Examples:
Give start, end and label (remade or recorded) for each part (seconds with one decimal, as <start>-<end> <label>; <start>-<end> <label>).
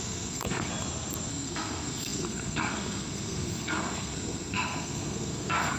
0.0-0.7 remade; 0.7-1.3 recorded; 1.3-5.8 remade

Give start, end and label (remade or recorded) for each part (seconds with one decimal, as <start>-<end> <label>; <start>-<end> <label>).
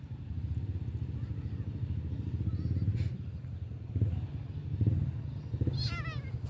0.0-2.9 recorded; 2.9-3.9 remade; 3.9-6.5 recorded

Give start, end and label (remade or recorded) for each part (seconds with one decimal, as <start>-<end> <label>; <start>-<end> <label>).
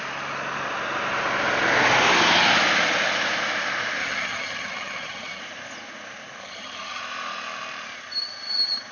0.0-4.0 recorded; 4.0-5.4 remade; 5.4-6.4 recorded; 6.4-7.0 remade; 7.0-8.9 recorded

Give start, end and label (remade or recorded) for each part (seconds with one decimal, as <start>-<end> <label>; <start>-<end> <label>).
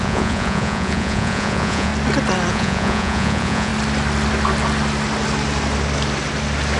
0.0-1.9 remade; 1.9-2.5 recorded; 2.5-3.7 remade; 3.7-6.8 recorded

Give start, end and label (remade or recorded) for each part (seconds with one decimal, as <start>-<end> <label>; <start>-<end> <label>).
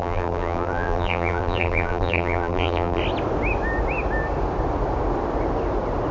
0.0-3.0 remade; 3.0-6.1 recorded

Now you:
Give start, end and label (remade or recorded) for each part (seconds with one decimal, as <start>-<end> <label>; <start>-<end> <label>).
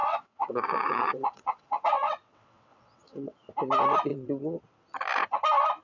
0.0-3.5 remade; 3.5-4.1 recorded; 4.1-4.6 remade; 4.6-5.8 recorded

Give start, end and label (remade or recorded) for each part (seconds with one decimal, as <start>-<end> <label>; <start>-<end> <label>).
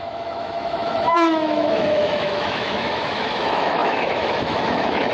0.0-5.1 remade